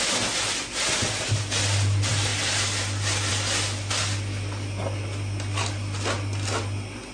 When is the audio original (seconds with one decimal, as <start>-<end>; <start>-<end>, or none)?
0.0-7.1